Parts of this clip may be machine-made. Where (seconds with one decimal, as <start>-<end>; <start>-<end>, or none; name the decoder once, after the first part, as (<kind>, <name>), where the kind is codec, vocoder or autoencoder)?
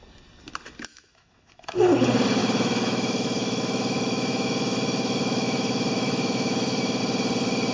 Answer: 0.9-1.9 (autoencoder, DAC-VAE); 2.4-7.0